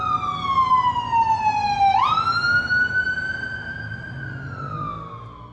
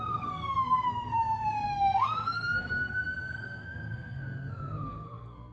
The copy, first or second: second